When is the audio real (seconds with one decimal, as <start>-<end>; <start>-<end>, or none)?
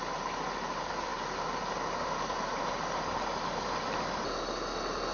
0.0-5.1